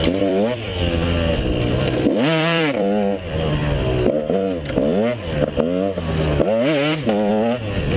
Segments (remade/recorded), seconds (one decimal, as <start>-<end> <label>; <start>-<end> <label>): 0.0-0.7 remade; 0.7-1.3 recorded; 1.3-3.6 remade; 3.6-7.3 recorded; 7.3-8.0 remade